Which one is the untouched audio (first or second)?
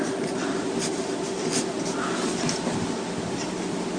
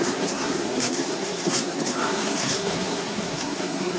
first